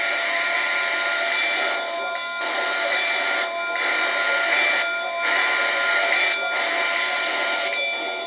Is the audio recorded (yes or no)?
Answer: yes